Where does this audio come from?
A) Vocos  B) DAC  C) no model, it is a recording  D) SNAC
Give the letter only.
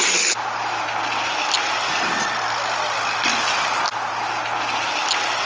C